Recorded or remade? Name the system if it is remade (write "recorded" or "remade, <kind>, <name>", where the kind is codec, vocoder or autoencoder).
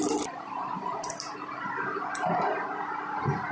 recorded